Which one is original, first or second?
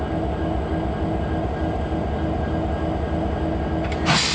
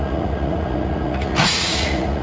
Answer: first